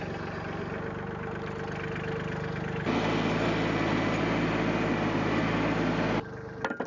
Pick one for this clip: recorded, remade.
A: recorded